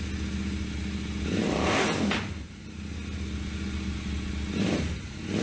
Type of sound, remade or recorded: recorded